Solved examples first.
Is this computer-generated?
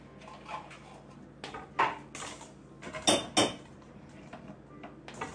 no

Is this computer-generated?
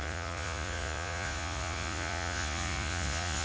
yes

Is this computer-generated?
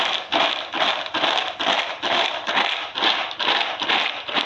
no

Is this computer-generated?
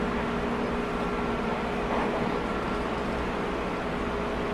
no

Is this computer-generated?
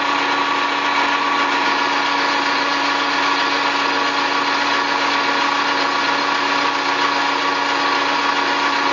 no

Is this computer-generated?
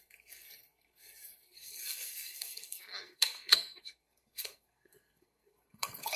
yes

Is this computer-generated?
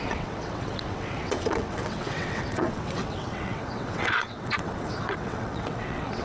yes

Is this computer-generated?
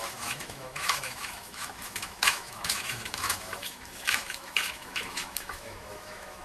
yes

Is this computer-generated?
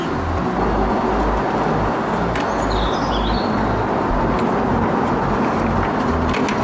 no